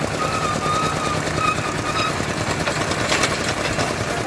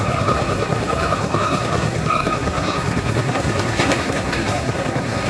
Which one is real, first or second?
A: first